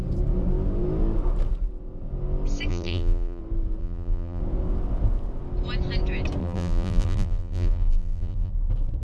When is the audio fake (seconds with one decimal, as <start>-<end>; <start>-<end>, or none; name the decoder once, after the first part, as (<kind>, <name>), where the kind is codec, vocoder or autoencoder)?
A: 2.7-3.4 (vocoder, BigVGAN v2); 3.8-4.4; 6.4-8.5